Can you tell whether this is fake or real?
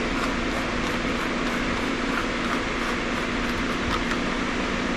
real